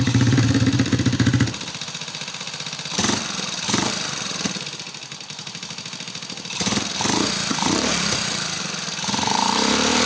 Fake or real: fake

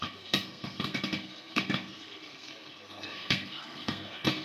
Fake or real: fake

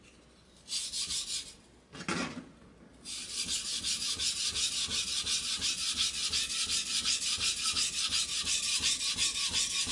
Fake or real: real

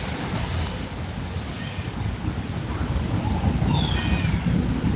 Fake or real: real